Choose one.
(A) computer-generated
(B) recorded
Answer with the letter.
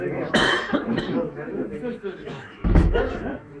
A